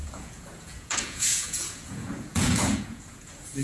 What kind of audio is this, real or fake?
fake